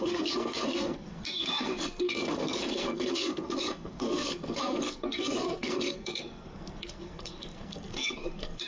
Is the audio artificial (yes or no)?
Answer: yes